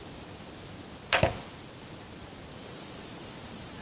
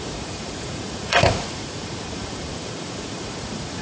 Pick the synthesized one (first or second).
second